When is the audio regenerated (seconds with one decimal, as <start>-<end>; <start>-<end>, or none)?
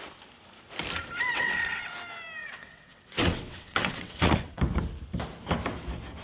1.3-1.9; 2.4-4.6